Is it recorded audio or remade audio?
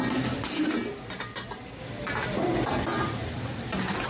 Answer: recorded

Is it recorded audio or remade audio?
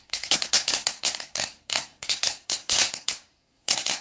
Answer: remade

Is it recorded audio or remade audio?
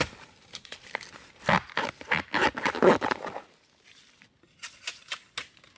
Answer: recorded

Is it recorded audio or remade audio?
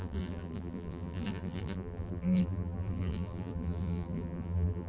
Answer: remade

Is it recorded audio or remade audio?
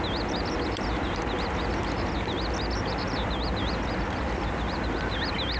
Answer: recorded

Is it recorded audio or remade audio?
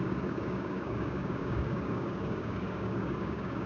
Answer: remade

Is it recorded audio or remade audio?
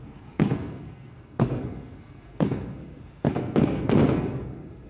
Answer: remade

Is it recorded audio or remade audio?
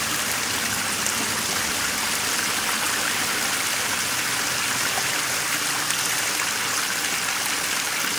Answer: recorded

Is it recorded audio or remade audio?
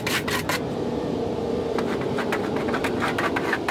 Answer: recorded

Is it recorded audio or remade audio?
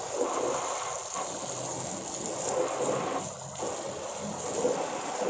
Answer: recorded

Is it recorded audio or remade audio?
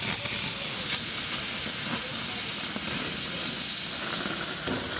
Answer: recorded